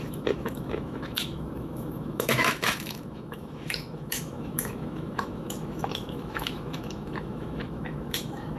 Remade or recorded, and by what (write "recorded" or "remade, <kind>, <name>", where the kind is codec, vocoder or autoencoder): remade, autoencoder, DAC-VAE